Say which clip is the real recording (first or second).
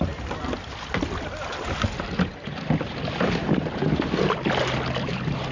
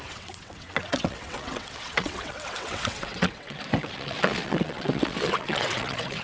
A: first